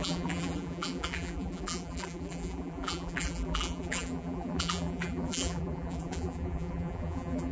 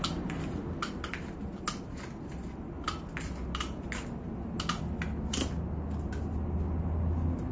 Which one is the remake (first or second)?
first